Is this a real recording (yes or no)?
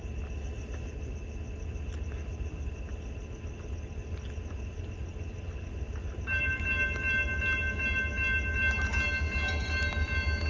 yes